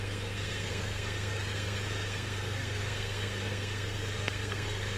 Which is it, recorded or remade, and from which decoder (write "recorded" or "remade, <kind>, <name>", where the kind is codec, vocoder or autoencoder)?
remade, codec, SNAC